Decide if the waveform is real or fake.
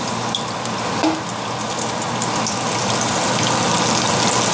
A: real